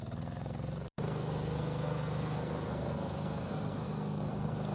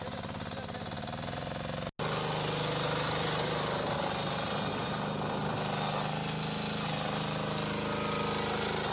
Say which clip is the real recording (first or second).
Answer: second